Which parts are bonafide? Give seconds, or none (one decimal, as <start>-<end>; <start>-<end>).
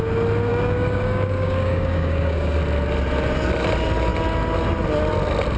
0.0-0.5; 2.6-5.6